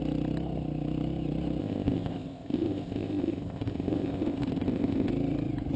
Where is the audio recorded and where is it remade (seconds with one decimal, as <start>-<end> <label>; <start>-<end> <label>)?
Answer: 0.0-1.6 recorded; 1.6-5.1 remade; 5.1-5.8 recorded